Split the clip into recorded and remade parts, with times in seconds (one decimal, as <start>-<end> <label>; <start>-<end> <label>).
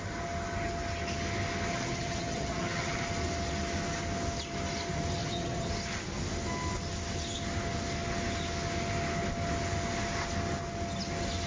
0.0-1.7 recorded; 1.7-3.0 remade; 3.0-5.2 recorded; 5.2-5.7 remade; 5.7-11.5 recorded